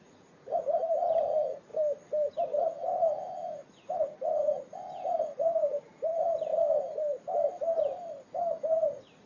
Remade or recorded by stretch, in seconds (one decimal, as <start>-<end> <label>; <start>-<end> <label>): 0.0-1.7 remade; 1.7-2.3 recorded; 2.3-6.1 remade; 6.1-8.6 recorded; 8.6-9.3 remade